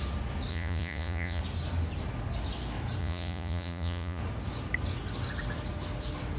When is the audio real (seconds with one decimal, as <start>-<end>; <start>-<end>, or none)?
0.0-0.5; 1.4-3.0; 4.2-6.4